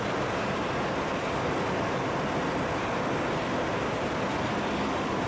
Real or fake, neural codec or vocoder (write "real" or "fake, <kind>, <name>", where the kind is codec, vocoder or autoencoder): real